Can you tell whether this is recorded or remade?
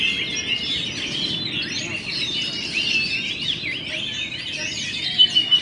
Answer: recorded